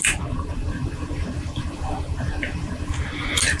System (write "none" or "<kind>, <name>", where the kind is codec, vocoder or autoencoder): none